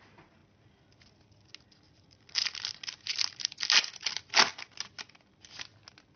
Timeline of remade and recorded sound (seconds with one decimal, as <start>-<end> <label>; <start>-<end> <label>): 0.0-6.2 recorded